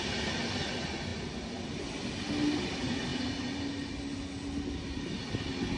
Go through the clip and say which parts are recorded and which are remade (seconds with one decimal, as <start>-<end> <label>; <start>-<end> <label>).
0.0-5.8 recorded